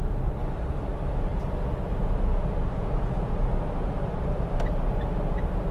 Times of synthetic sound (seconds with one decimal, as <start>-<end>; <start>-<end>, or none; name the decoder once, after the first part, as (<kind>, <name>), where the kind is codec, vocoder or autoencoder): none